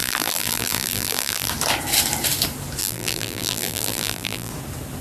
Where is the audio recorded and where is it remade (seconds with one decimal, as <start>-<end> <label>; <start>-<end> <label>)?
0.0-1.5 remade; 1.5-2.8 recorded; 2.8-4.5 remade; 4.5-5.0 recorded